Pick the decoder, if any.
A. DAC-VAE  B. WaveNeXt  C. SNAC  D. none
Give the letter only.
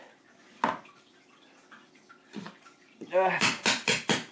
D